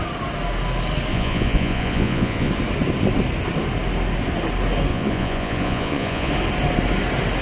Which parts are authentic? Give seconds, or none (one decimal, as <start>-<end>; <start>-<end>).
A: 0.0-1.1; 2.5-4.9; 6.3-7.4